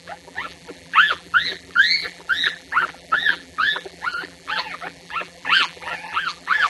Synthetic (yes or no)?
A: yes